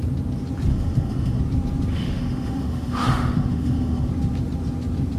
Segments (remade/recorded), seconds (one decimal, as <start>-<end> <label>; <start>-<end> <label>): 0.0-0.7 recorded; 0.7-1.4 remade; 1.4-1.9 recorded; 1.9-4.1 remade; 4.1-5.2 recorded